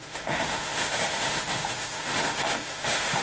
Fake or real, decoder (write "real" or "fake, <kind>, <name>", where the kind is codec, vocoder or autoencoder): fake, autoencoder, DAC-VAE